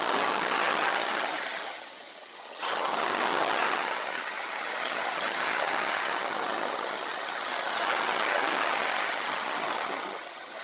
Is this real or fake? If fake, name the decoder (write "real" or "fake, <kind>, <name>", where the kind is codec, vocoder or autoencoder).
fake, vocoder, HiFi-GAN